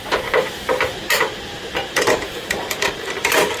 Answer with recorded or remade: remade